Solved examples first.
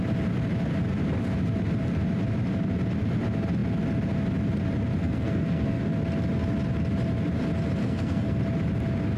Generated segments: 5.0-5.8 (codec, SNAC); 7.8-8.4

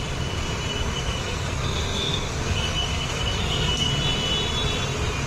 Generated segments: 0.8-3.9 (codec, SNAC)

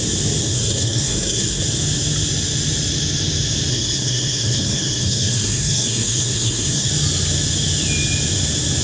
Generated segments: 0.4-1.6 (codec, SNAC); 3.7-6.9

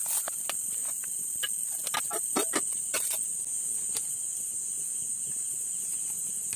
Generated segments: none